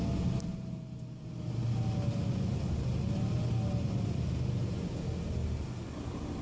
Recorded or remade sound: recorded